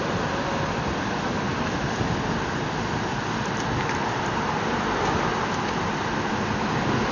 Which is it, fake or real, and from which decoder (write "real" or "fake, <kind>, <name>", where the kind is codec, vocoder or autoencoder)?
fake, vocoder, BigVGAN v2